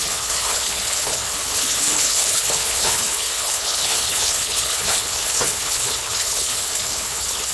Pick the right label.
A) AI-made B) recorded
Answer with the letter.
A